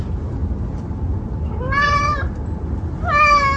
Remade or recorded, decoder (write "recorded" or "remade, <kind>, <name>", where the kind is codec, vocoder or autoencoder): recorded